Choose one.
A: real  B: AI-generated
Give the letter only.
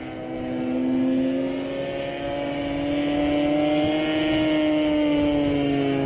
A